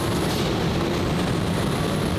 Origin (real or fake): real